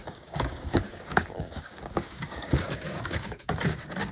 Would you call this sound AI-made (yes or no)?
yes